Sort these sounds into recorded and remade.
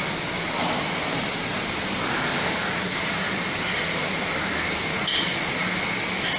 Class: recorded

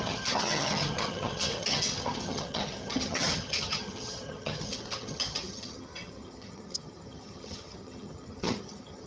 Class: remade